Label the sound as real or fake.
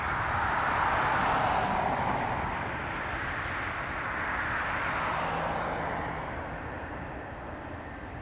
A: real